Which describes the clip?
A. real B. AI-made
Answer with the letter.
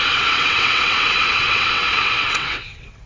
B